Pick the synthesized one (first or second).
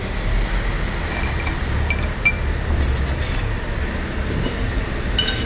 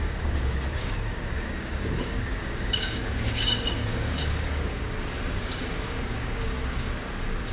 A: second